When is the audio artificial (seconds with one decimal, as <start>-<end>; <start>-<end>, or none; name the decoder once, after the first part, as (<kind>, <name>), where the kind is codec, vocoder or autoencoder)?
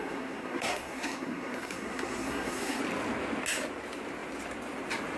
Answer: 0.0-2.8 (codec, SNAC)